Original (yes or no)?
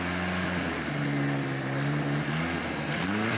yes